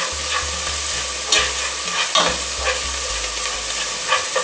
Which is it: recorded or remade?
recorded